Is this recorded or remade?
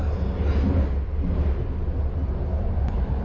recorded